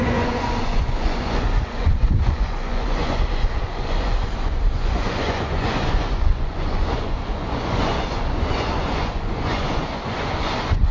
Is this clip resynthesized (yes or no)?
yes